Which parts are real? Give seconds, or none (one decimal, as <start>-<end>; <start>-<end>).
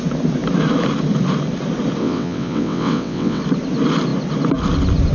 0.0-2.0; 3.4-5.1